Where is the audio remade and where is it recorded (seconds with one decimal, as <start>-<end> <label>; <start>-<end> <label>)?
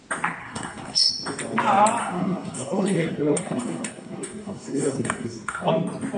0.0-0.4 recorded; 0.4-1.1 remade; 1.1-2.0 recorded; 2.0-5.7 remade; 5.7-6.2 recorded